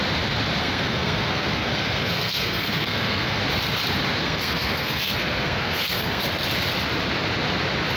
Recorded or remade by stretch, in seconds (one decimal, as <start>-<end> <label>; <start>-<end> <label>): 0.0-0.6 recorded; 0.6-3.4 remade; 3.4-4.2 recorded; 4.2-6.2 remade; 6.2-8.0 recorded